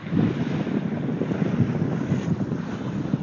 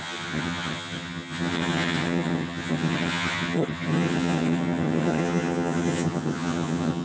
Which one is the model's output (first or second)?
second